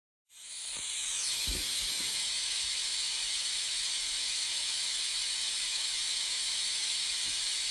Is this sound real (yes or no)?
no